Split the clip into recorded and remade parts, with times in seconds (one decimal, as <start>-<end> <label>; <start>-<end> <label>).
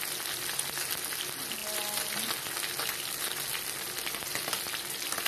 0.0-5.3 recorded